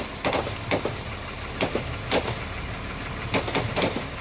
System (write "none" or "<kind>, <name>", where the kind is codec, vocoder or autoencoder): none